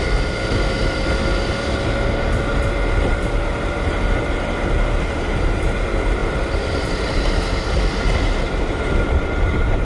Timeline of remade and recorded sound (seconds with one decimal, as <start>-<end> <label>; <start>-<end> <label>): 0.0-0.8 recorded; 0.8-1.7 remade; 1.7-6.2 recorded; 6.2-7.3 remade; 7.3-9.8 recorded